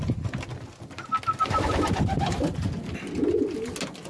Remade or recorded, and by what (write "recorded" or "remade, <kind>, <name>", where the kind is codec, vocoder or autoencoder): recorded